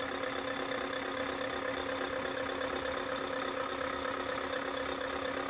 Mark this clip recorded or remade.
recorded